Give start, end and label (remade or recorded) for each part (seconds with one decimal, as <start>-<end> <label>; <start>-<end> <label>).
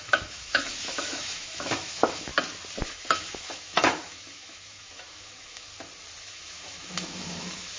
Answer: 0.0-2.3 remade; 2.3-2.9 recorded; 2.9-5.7 remade; 5.7-6.2 recorded; 6.2-7.8 remade